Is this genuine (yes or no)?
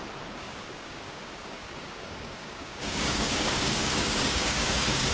no